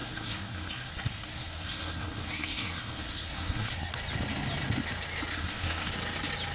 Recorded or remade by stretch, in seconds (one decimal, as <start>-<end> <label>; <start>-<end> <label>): 0.0-3.9 remade; 3.9-5.3 recorded; 5.3-5.9 remade; 5.9-6.5 recorded